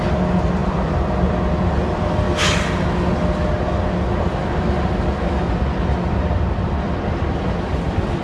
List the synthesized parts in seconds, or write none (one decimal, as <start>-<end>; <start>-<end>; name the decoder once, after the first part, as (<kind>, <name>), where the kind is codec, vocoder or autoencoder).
none